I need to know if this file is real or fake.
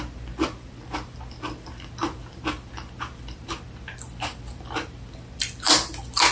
fake